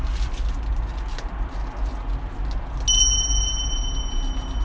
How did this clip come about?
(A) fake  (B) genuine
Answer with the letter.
B